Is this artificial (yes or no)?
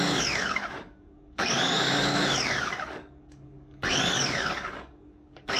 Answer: yes